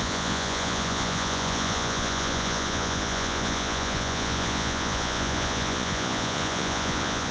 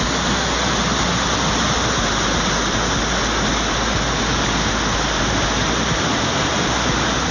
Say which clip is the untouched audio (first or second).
second